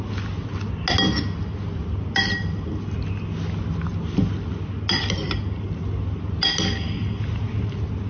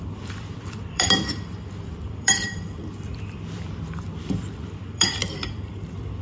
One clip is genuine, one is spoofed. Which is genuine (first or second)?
first